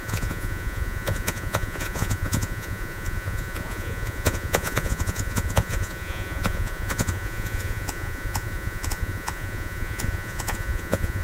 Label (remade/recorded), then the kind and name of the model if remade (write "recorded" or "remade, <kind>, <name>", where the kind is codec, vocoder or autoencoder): remade, vocoder, Vocos